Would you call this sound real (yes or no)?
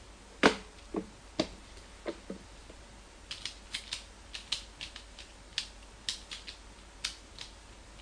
yes